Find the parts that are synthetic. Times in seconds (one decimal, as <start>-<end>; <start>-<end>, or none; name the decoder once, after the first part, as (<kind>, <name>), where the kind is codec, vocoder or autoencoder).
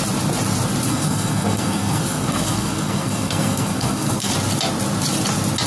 0.9-4.3 (codec, SNAC)